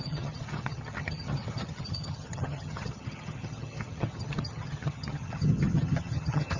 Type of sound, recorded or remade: remade